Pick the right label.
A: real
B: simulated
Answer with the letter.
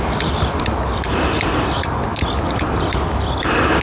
A